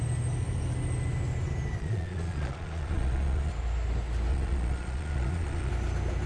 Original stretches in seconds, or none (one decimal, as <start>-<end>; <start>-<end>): 0.0-1.8; 3.5-4.3; 5.7-6.3